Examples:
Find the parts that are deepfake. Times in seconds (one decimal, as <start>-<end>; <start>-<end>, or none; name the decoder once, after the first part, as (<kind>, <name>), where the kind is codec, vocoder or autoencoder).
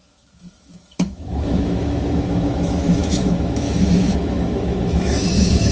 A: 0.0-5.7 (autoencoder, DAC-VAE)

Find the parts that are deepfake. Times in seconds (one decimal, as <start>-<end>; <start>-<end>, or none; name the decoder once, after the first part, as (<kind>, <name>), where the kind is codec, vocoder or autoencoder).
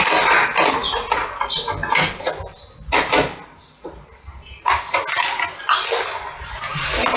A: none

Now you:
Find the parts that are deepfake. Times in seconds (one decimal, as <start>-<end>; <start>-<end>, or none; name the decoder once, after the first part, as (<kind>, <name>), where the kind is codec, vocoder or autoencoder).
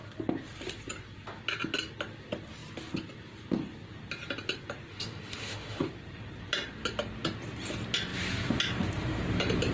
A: 4.9-5.8 (autoencoder, DAC-VAE)